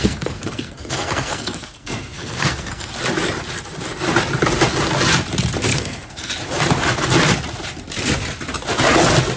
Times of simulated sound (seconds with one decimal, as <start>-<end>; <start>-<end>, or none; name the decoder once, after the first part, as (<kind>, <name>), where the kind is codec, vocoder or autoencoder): 0.0-2.9 (codec, SNAC); 5.7-6.3